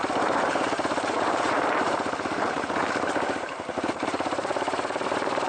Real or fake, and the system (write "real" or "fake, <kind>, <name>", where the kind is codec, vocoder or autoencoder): fake, vocoder, BigVGAN v2